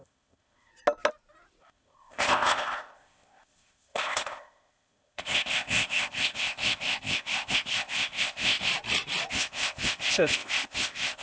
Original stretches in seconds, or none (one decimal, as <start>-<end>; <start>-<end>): 0.7-1.6; 8.7-9.3